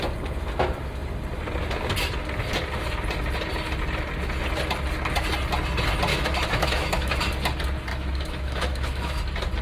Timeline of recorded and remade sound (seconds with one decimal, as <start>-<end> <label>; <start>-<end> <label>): 0.0-6.1 recorded; 6.1-7.2 remade; 7.2-7.9 recorded; 7.9-9.2 remade; 9.2-9.6 recorded